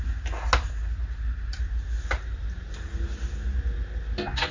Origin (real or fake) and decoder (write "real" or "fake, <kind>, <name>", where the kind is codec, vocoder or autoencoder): real